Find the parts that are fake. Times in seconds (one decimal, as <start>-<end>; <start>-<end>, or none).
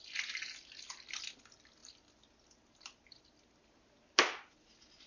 none